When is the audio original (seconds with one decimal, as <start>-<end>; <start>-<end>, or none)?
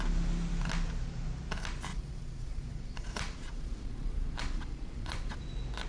0.0-1.9; 5.4-5.9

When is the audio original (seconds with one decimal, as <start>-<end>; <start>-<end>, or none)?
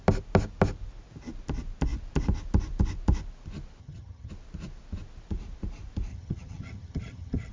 0.0-3.8; 4.3-6.1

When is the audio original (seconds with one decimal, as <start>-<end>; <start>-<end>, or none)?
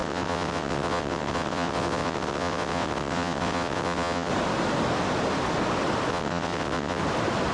4.3-6.1; 7.0-7.5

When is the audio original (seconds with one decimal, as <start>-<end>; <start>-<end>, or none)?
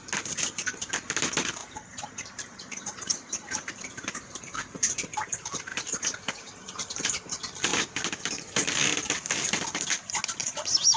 0.0-1.6; 4.4-5.7; 7.1-10.4